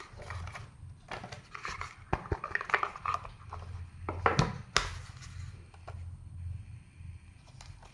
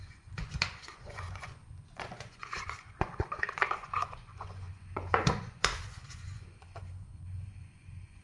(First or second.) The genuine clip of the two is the first